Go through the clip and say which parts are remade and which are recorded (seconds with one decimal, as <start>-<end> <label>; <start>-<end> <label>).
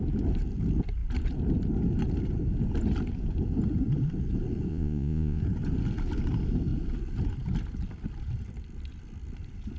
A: 0.0-4.7 recorded; 4.7-5.4 remade; 5.4-9.8 recorded